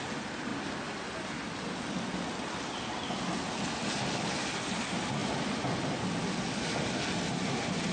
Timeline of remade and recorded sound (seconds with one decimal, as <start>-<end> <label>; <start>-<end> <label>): 0.0-5.2 recorded; 5.2-5.8 remade; 5.8-7.9 recorded